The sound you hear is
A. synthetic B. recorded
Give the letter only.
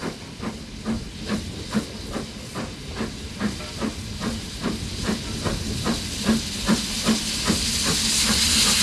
B